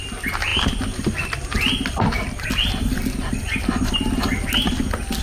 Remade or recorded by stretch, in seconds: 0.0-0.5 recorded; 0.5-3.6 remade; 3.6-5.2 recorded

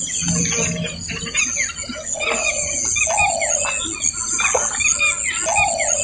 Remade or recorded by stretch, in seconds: 0.0-6.0 recorded

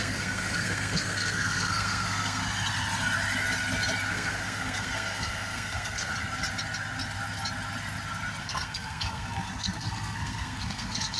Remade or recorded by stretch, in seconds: 0.0-2.4 remade; 2.4-4.1 recorded; 4.1-6.1 remade; 6.1-8.4 recorded; 8.4-11.2 remade

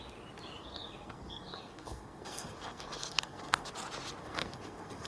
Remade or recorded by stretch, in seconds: 0.0-0.6 recorded; 0.6-3.7 remade; 3.7-4.2 recorded; 4.2-5.1 remade